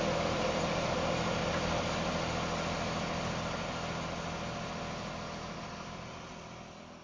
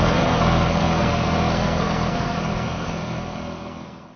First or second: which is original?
first